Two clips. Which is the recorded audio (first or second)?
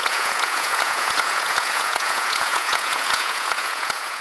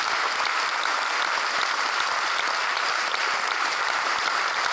second